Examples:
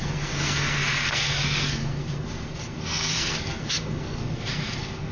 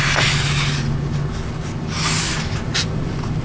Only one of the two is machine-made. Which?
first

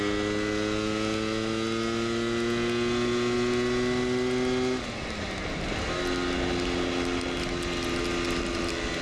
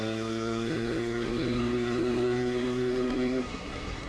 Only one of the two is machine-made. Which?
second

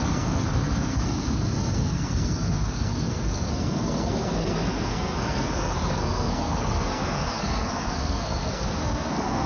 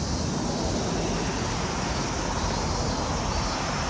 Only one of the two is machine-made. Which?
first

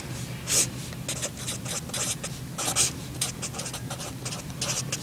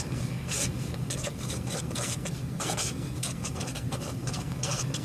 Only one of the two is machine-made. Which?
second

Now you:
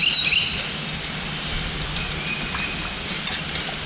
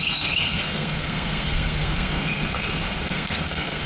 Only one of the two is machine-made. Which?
second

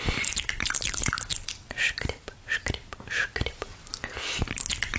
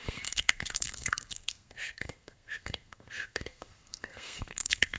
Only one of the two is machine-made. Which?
second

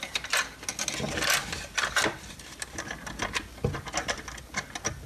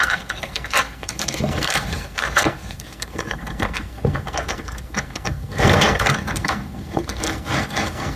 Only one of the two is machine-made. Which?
second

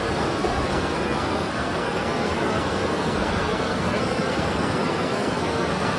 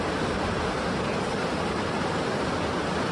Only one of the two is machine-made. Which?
first